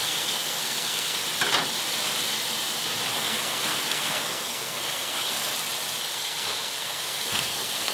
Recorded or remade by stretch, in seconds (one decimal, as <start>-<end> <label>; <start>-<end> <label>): 0.0-1.2 remade; 1.2-3.1 recorded; 3.1-5.5 remade; 5.5-6.1 recorded; 6.1-7.9 remade